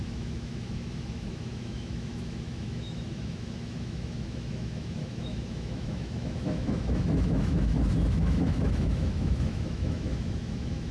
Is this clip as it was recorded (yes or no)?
no